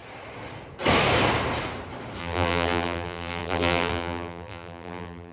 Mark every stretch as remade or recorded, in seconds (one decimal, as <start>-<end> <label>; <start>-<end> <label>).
0.0-2.2 recorded; 2.2-5.3 remade